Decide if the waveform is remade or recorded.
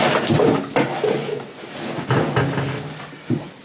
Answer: recorded